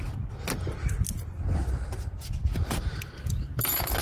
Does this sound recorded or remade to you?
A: recorded